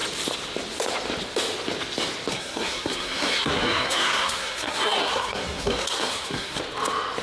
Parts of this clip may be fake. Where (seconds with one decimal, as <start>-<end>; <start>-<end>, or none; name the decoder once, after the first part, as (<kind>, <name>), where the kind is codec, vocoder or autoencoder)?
2.3-6.6 (codec, SNAC)